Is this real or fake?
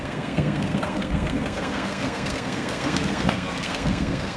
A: fake